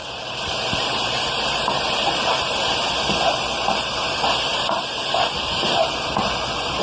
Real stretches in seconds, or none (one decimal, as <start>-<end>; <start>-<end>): 2.1-6.8